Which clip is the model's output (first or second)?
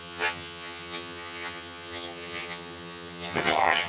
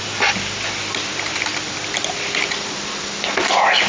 first